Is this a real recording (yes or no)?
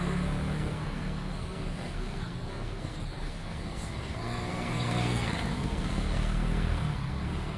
no